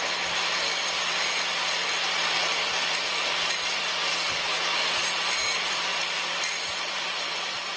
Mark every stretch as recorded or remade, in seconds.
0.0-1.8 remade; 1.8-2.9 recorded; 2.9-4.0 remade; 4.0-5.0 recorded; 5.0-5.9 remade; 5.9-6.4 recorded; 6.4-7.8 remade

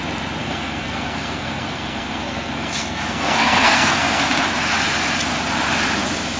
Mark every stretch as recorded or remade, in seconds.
0.0-0.4 recorded; 0.4-4.2 remade; 4.2-6.4 recorded